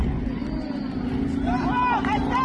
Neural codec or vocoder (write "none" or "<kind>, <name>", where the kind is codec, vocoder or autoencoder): none